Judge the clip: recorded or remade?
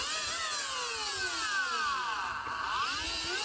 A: recorded